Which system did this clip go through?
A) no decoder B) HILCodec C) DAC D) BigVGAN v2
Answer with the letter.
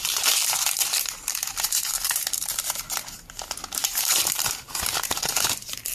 D